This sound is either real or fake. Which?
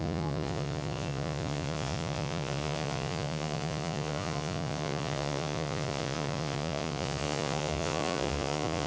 fake